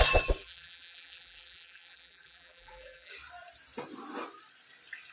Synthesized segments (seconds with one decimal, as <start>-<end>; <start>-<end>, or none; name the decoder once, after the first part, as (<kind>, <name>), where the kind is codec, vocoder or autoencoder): 0.4-3.1 (vocoder, BigVGAN v2)